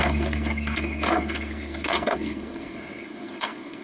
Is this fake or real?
fake